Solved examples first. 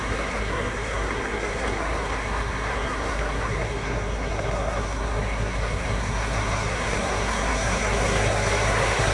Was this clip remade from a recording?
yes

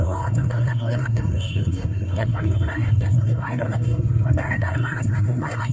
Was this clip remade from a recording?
yes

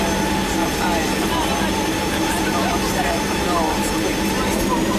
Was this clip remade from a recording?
no